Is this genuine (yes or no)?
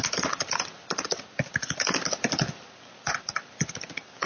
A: yes